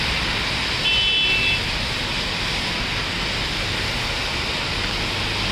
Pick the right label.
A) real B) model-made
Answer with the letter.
A